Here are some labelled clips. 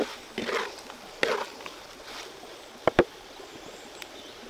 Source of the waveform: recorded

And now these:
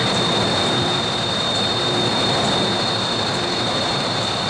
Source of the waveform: remade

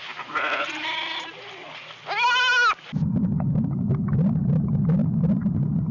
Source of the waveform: recorded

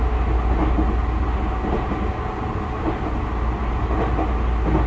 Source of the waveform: recorded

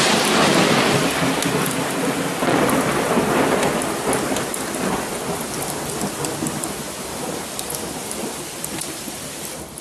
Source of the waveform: recorded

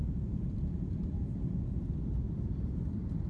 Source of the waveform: remade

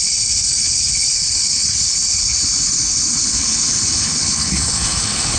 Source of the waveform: remade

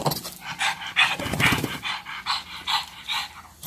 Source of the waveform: recorded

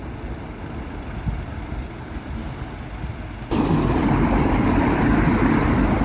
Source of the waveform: recorded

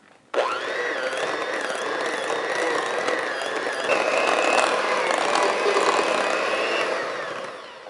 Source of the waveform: recorded